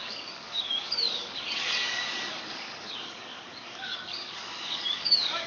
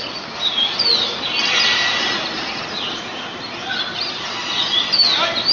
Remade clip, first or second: first